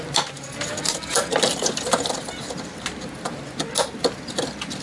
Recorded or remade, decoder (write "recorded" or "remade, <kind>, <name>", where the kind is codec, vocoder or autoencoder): recorded